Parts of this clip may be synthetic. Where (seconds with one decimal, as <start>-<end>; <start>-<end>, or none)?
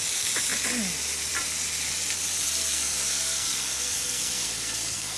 2.6-5.2